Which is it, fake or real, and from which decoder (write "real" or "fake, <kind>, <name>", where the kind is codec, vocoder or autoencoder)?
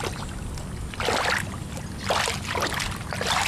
real